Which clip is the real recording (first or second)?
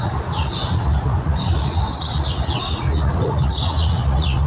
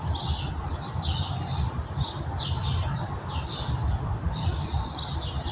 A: second